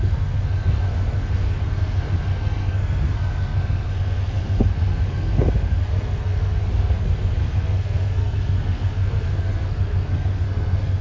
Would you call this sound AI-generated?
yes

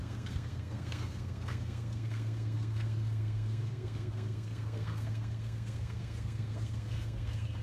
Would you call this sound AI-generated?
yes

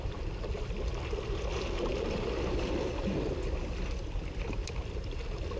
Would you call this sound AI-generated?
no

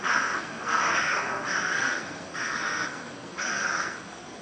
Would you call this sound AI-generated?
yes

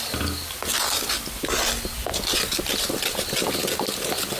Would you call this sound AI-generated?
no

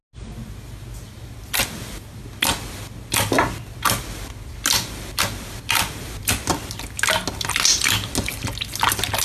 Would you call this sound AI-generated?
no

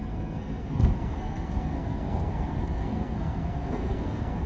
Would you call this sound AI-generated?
yes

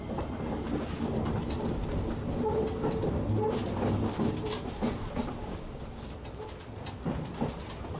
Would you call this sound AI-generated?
no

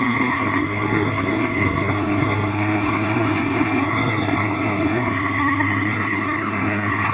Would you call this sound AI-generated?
yes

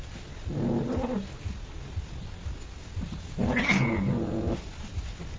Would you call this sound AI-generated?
no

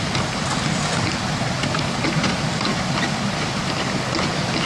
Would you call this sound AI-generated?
no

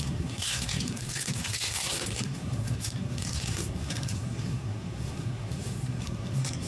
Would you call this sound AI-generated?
yes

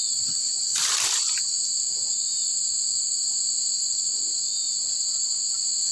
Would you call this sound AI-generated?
no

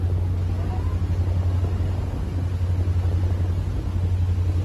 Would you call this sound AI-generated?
no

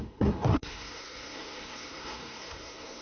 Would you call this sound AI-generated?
yes